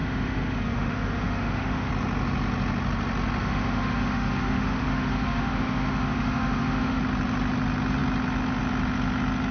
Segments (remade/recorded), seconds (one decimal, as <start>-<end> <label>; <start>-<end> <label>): 0.0-1.9 remade; 1.9-3.4 recorded; 3.4-7.0 remade; 7.0-9.5 recorded